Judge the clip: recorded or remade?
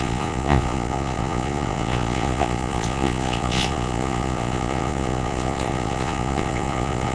remade